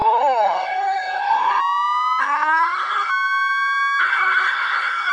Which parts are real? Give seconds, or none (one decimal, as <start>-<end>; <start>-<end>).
1.6-2.2; 3.1-4.0